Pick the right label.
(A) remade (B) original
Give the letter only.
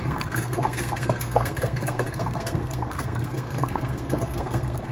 A